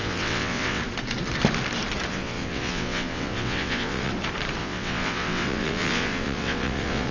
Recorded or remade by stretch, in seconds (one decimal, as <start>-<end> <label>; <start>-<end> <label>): 0.0-0.8 remade; 0.8-2.1 recorded; 2.1-4.1 remade; 4.1-4.6 recorded; 4.6-7.1 remade